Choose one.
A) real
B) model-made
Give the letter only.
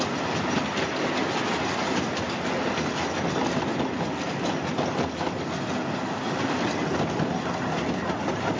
A